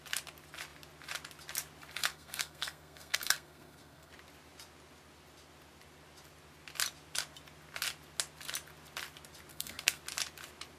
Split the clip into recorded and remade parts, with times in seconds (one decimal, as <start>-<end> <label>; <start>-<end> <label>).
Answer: 0.0-2.1 recorded; 2.1-4.1 remade; 4.1-9.5 recorded; 9.5-10.0 remade; 10.0-10.8 recorded